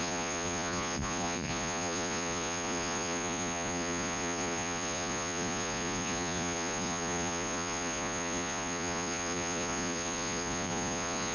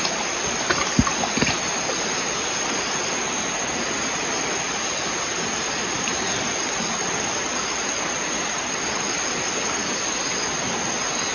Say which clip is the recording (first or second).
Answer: second